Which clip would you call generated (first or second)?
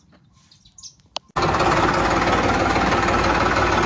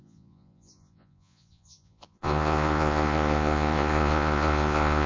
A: second